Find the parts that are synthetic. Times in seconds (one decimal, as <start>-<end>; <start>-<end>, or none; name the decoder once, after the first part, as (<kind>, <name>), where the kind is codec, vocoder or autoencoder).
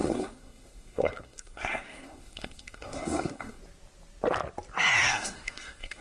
0.0-3.6 (codec, SNAC); 5.0-6.0